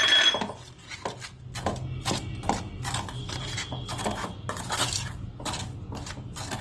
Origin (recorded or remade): recorded